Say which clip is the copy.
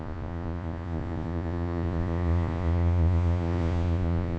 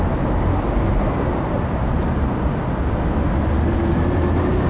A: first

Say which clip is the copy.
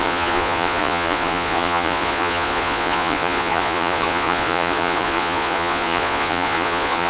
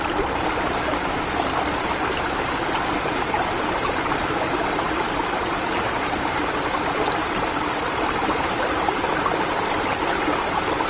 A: first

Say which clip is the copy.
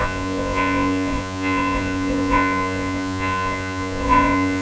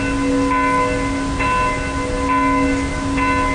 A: first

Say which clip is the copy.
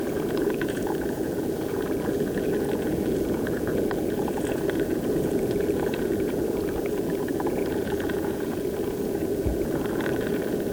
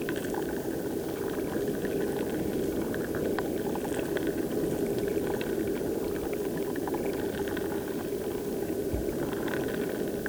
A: first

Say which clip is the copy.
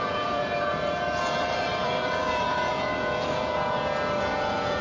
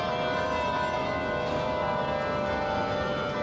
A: first